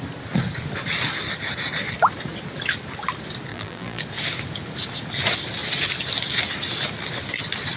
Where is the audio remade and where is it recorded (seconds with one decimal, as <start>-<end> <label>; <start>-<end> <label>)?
0.0-3.5 recorded; 3.5-4.0 remade; 4.0-7.8 recorded